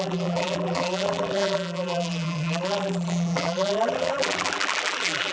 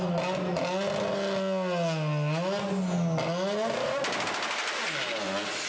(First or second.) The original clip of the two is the second